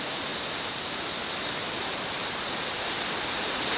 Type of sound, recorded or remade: recorded